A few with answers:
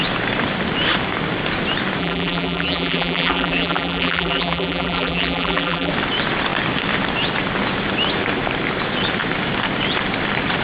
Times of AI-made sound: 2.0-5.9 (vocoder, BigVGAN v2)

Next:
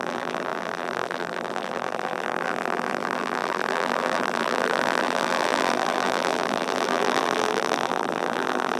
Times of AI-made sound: 0.0-8.8 (vocoder, BigVGAN v2)